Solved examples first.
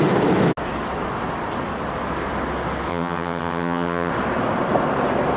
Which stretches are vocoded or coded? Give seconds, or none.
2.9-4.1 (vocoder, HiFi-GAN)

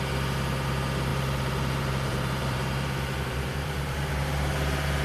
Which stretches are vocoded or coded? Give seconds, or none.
1.1-4.1 (vocoder, BigVGAN v2)

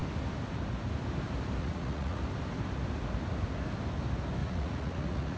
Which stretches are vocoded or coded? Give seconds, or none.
1.6-2.2 (vocoder, Vocos); 4.4-5.4

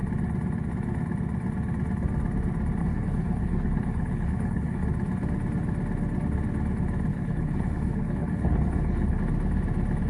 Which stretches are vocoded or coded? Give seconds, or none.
2.8-4.8 (codec, HILCodec); 7.1-9.2

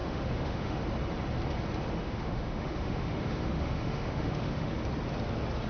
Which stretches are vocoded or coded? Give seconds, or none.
0.0-0.8 (autoencoder, DAC-VAE); 2.0-4.7

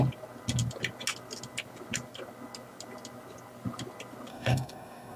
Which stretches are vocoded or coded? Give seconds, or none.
4.3-5.2 (codec, DAC)